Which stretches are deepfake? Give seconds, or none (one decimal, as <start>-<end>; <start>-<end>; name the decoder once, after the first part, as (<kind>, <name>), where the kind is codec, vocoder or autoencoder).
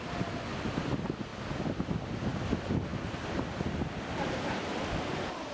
none